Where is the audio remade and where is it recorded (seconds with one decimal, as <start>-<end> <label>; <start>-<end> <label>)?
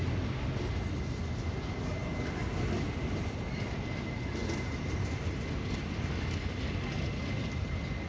0.0-8.1 recorded